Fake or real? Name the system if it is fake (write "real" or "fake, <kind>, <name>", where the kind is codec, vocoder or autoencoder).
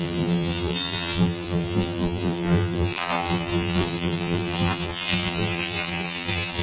fake, vocoder, BigVGAN v2